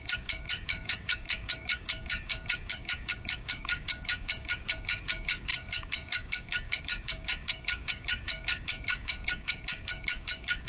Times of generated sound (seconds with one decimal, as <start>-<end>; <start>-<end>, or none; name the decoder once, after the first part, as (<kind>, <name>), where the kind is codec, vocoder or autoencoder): 0.0-10.7 (codec, DAC)